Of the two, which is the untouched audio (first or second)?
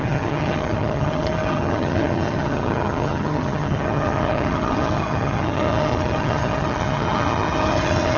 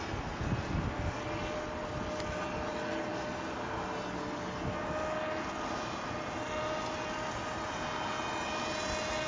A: second